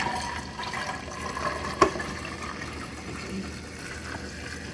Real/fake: real